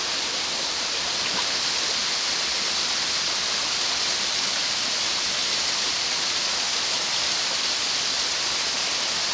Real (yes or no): yes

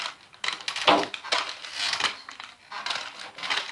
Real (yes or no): yes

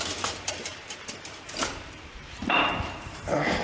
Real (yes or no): no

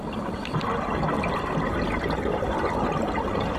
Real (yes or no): yes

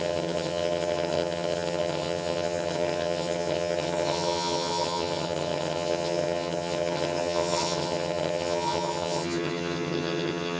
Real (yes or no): no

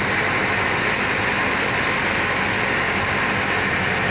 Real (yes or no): yes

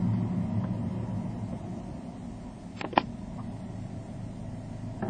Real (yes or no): yes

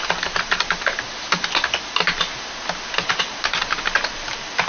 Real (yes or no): yes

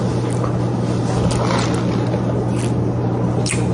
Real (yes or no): yes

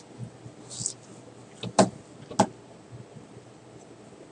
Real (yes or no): yes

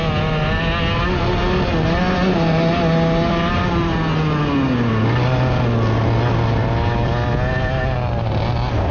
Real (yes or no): yes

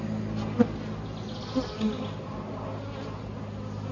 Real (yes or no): yes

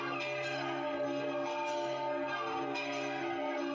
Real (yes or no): no